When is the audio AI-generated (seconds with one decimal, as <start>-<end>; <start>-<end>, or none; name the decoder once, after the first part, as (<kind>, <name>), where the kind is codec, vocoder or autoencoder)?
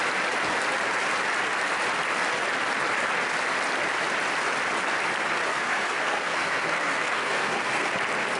5.5-7.9 (codec, SNAC)